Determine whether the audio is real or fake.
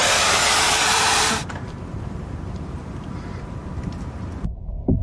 fake